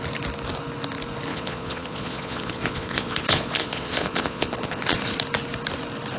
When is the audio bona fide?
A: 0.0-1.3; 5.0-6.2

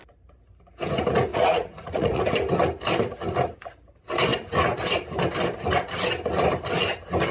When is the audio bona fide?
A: 0.0-1.3; 2.2-7.3